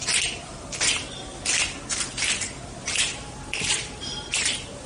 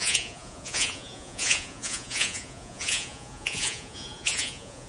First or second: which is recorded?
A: first